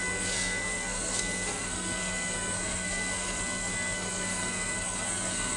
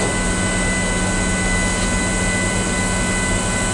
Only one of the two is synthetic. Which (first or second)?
first